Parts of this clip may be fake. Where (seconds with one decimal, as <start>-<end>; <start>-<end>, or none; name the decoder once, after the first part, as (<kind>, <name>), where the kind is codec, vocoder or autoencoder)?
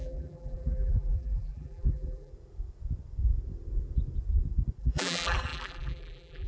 0.0-2.3 (vocoder, BigVGAN v2); 4.8-6.5